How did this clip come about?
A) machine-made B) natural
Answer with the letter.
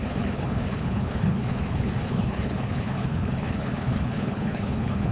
A